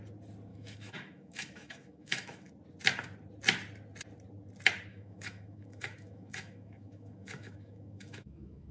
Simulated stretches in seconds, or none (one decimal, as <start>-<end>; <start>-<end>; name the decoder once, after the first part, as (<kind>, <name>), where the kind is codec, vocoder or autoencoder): 0.5-2.5 (autoencoder, DAC-VAE); 4.9-8.7

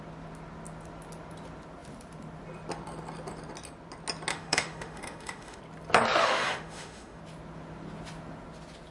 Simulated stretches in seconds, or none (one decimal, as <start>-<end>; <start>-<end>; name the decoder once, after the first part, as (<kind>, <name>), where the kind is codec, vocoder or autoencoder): 4.3-5.6 (autoencoder, DAC-VAE); 6.2-7.2

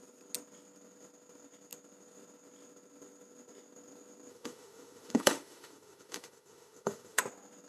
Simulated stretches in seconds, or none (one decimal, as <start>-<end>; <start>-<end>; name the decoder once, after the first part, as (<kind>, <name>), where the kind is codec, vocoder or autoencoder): 4.3-7.2 (autoencoder, DAC-VAE)

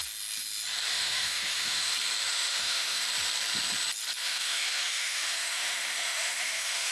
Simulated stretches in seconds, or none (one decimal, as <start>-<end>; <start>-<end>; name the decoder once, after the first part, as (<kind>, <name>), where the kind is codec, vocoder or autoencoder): 0.9-1.9 (autoencoder, DAC-VAE); 2.3-3.0; 4.2-6.9

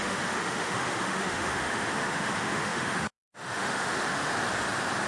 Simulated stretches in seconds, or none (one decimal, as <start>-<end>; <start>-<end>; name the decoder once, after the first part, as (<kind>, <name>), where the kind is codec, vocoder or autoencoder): 0.0-4.3 (autoencoder, DAC-VAE)

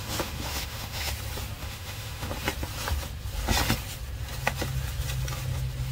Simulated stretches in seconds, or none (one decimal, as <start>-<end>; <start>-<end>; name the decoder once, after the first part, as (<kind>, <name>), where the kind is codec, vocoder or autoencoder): 0.0-1.1 (autoencoder, DAC-VAE); 1.6-2.3

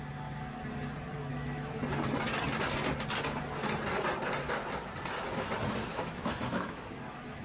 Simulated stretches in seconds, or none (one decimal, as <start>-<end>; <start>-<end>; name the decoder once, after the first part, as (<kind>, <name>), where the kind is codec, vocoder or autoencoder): 1.3-1.8 (autoencoder, DAC-VAE); 5.9-7.4

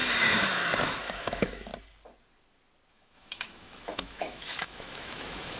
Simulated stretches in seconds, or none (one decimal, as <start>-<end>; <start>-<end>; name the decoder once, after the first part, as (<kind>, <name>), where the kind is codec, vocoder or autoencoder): 0.8-1.7 (autoencoder, DAC-VAE); 2.9-5.6